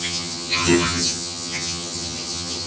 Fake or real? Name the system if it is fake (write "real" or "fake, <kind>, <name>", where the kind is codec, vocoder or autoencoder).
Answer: fake, vocoder, HiFi-GAN